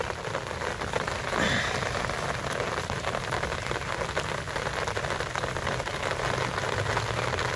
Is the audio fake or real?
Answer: real